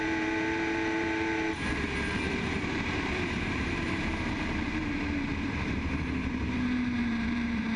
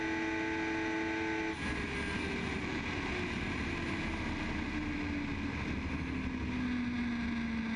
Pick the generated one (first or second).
first